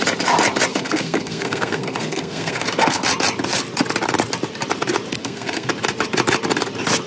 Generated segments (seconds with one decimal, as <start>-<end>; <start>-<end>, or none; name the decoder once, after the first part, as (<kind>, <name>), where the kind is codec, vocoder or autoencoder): 0.7-3.0 (codec, SNAC); 5.2-5.7